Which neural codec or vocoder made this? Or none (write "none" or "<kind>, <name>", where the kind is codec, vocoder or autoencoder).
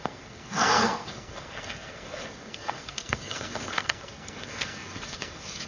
codec, SNAC